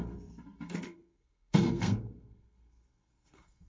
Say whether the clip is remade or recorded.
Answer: remade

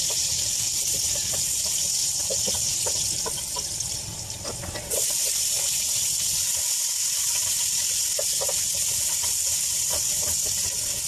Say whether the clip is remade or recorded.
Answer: remade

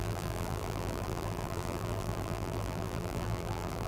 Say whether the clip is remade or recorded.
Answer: remade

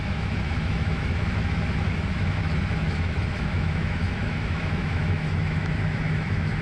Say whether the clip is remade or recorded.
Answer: remade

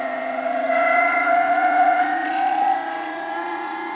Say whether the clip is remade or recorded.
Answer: remade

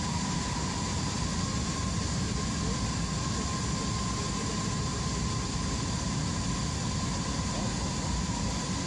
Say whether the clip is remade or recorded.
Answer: recorded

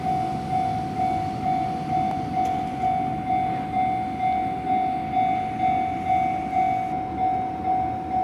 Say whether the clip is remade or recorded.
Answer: recorded